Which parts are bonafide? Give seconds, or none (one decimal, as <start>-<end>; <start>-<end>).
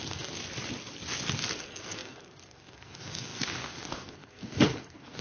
0.4-1.6